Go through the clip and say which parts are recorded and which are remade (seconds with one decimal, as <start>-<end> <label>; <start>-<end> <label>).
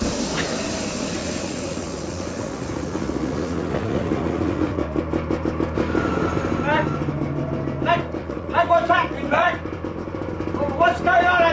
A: 0.0-1.2 recorded; 1.2-5.0 remade; 5.0-8.2 recorded; 8.2-9.5 remade; 9.5-11.5 recorded